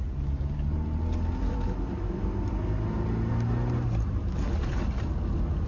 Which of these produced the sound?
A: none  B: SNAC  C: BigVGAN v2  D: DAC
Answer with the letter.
A